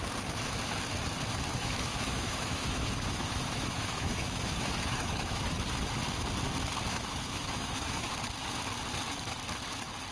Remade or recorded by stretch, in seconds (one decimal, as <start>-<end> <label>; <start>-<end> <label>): 0.0-1.5 recorded; 1.5-5.6 remade; 5.6-6.9 recorded; 6.9-8.1 remade; 8.1-10.1 recorded

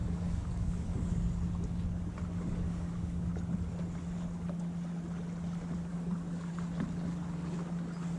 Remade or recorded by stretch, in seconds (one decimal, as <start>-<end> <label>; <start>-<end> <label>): 0.0-1.2 remade; 1.2-2.3 recorded; 2.3-3.3 remade; 3.3-5.9 recorded; 5.9-6.5 remade; 6.5-8.2 recorded

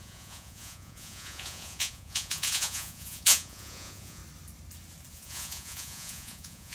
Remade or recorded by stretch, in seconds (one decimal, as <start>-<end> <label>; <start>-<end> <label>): 0.0-4.2 remade; 4.2-5.1 recorded; 5.1-6.7 remade

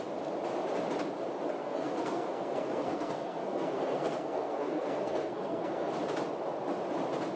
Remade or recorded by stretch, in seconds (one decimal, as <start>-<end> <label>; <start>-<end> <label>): 0.0-1.6 recorded; 1.6-5.9 remade; 5.9-7.4 recorded

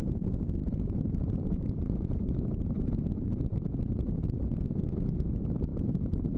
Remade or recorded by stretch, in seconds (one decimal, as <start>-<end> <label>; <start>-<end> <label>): 0.0-0.6 recorded; 0.6-2.9 remade; 2.9-5.7 recorded; 5.7-6.4 remade

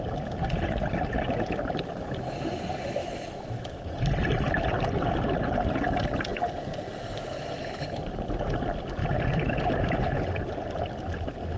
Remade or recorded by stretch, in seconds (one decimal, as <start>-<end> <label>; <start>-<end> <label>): 0.0-3.0 recorded; 3.0-3.9 remade; 3.9-11.6 recorded

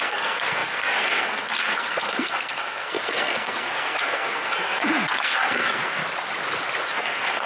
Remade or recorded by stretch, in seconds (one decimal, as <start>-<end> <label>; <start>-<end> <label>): 0.0-6.0 remade; 6.0-6.9 recorded; 6.9-7.5 remade

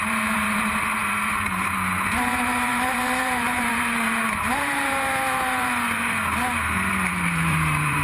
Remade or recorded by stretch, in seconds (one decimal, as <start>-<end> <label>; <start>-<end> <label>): 0.0-8.0 remade